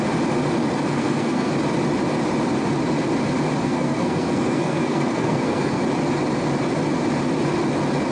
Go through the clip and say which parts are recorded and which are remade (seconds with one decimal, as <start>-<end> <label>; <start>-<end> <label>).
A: 0.0-0.9 recorded; 0.9-1.5 remade; 1.5-3.6 recorded; 3.6-5.8 remade; 5.8-8.1 recorded

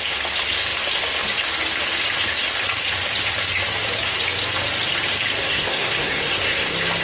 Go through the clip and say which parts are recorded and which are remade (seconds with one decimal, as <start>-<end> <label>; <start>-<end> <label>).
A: 0.0-5.4 recorded; 5.4-6.6 remade; 6.6-7.0 recorded

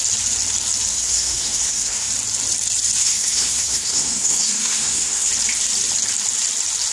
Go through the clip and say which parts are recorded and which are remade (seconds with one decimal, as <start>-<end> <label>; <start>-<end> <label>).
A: 0.0-0.9 recorded; 0.9-2.1 remade; 2.1-3.0 recorded; 3.0-5.3 remade; 5.3-6.9 recorded

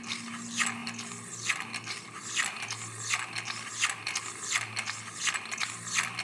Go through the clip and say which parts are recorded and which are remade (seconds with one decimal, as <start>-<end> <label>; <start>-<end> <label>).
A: 0.0-6.2 recorded